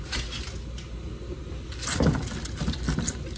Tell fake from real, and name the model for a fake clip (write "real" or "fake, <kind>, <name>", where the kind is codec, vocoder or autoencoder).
real